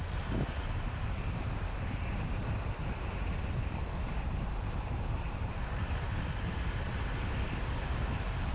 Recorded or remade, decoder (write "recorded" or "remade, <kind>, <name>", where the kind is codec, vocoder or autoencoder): remade, vocoder, BigVGAN v2